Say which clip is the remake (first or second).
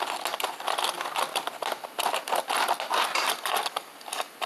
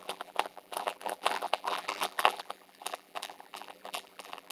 second